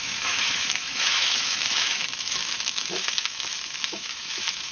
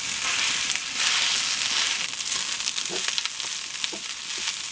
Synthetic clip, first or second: first